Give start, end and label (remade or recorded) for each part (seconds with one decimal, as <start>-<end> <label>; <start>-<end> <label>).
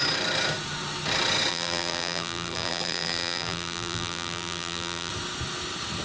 0.0-1.5 recorded; 1.5-5.1 remade; 5.1-6.0 recorded